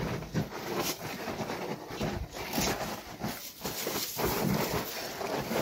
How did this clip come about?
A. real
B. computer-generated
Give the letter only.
A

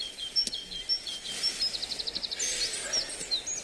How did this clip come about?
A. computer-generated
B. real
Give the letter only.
B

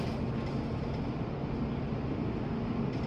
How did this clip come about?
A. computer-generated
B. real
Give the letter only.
B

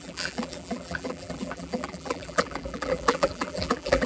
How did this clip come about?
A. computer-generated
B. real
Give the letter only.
A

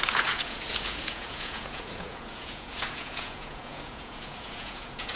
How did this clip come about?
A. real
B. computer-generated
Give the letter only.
B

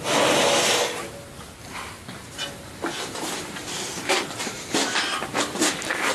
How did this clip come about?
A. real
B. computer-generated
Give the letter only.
A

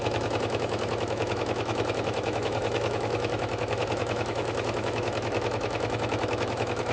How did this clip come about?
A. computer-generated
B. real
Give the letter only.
A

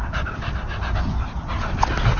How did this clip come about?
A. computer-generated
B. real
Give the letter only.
B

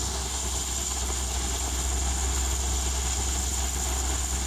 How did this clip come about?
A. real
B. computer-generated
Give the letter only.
A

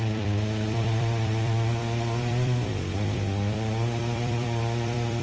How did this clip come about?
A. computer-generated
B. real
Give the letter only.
A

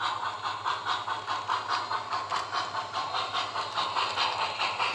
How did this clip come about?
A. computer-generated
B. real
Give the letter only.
B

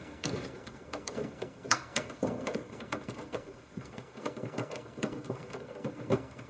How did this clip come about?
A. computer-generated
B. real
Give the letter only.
A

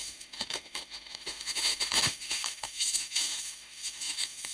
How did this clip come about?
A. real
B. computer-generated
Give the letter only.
B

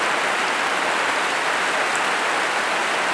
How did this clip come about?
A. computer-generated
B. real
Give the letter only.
B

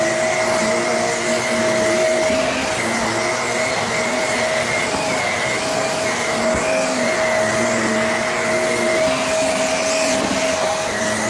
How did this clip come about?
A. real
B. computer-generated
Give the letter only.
A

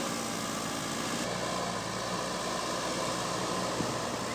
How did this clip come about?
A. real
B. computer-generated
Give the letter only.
A